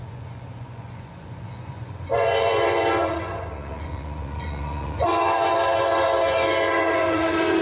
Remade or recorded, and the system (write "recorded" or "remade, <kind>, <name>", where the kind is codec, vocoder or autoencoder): remade, vocoder, Vocos